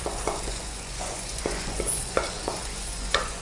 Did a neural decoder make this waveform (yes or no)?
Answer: yes